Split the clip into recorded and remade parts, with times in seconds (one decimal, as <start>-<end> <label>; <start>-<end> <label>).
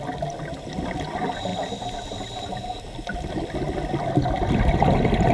0.0-5.3 recorded